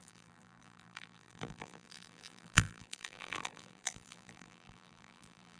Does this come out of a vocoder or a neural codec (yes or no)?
yes